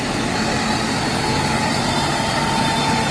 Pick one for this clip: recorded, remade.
recorded